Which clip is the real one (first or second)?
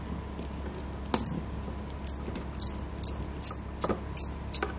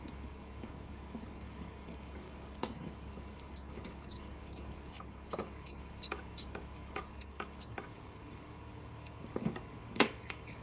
first